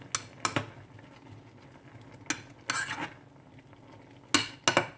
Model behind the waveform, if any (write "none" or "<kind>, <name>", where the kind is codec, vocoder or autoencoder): none